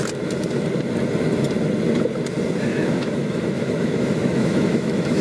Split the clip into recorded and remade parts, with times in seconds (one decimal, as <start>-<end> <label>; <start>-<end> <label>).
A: 0.0-2.7 recorded; 2.7-5.2 remade